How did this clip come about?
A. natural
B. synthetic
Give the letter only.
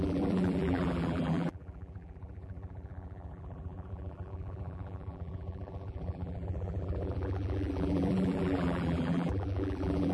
B